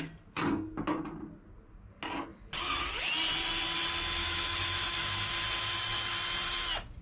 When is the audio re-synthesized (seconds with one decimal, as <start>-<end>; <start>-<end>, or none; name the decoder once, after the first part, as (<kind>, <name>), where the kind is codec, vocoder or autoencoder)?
4.2-4.9 (autoencoder, DAC-VAE)